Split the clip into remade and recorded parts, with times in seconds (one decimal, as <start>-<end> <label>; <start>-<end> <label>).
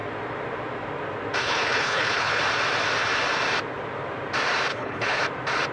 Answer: 0.0-1.4 recorded; 1.4-2.4 remade; 2.4-4.7 recorded; 4.7-5.2 remade; 5.2-5.7 recorded